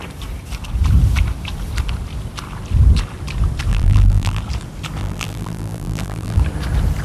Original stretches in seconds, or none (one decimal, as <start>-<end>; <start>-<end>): 0.0-3.7; 4.4-5.0; 6.4-7.0